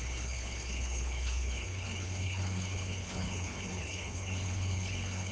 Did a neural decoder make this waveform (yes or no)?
yes